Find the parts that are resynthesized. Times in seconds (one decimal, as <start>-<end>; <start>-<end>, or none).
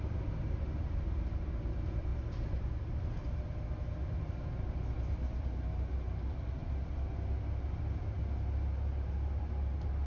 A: none